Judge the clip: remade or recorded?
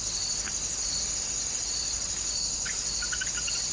recorded